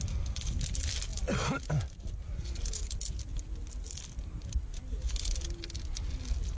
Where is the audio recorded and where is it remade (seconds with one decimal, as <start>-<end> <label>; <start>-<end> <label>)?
0.0-6.6 recorded